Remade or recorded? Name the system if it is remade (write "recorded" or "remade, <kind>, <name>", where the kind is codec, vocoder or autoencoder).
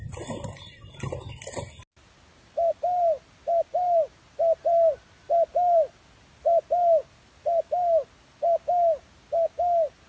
recorded